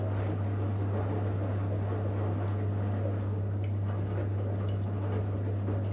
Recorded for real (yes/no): yes